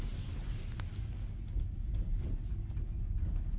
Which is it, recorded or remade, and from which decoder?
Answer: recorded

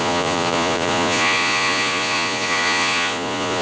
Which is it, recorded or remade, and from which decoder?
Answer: remade, vocoder, Vocos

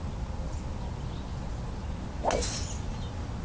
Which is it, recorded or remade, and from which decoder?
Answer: recorded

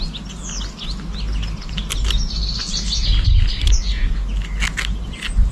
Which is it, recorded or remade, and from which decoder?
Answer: recorded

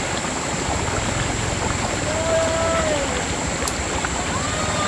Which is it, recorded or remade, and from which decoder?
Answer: recorded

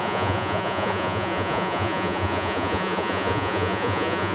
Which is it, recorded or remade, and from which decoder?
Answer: remade, vocoder, Vocos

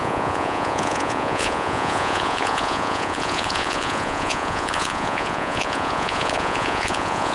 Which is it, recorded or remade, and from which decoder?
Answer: remade, vocoder, Vocos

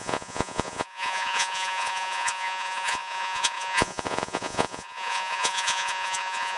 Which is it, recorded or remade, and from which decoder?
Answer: remade, vocoder, Vocos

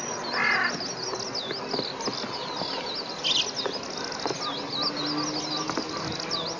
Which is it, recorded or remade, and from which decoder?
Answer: recorded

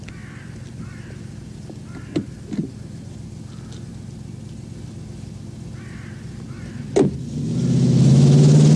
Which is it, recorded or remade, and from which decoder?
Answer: recorded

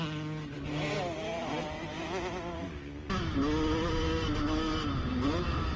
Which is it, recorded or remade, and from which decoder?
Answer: recorded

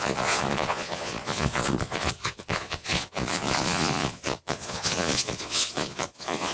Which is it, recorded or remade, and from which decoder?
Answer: remade, vocoder, Vocos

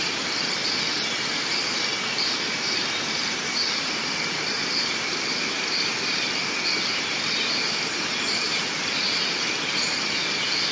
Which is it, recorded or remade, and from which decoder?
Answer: recorded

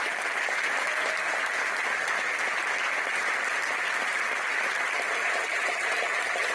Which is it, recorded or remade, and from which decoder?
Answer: recorded